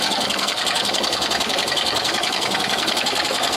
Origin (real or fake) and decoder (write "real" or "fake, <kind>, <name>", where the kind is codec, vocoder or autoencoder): fake, codec, SNAC